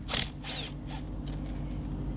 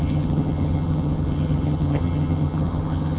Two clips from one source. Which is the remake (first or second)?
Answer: second